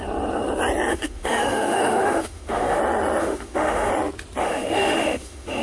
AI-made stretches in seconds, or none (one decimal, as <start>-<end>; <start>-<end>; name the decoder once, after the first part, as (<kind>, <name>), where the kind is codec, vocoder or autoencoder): 0.9-2.8 (autoencoder, DAC-VAE); 3.2-3.9; 4.4-5.6